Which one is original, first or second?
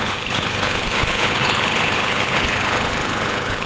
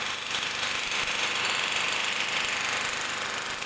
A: second